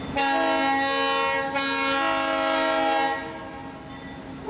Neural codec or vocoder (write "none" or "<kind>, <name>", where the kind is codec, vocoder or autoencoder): none